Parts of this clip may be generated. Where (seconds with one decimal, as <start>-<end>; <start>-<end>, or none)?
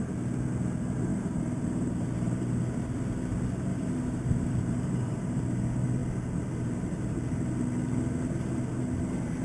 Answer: 1.1-2.5; 3.7-5.4